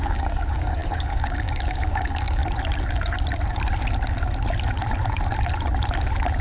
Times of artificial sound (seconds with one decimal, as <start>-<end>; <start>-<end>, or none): 0.0-2.4